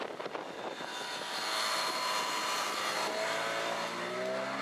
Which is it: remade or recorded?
recorded